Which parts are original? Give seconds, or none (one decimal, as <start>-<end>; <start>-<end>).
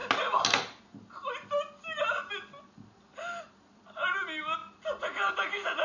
0.0-5.8